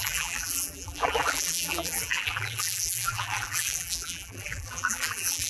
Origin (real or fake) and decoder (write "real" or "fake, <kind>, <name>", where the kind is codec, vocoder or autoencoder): fake, vocoder, BigVGAN v2